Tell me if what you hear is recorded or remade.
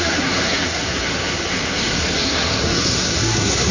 remade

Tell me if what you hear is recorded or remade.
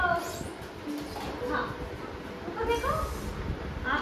recorded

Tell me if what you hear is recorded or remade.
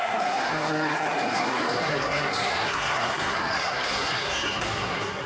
remade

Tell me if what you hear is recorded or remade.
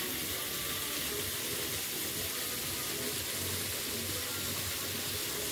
recorded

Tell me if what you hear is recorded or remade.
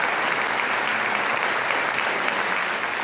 recorded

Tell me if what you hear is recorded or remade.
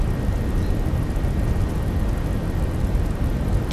recorded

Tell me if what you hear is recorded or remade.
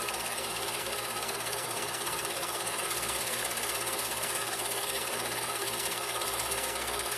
remade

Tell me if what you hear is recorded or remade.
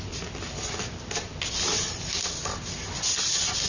recorded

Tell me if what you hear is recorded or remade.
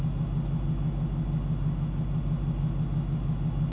recorded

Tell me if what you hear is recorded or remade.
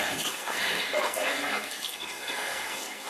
remade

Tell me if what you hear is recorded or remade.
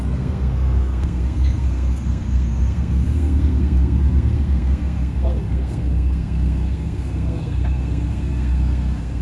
remade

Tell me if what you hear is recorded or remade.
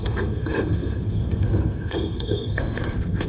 remade